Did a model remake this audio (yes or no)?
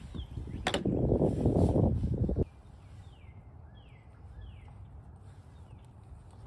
no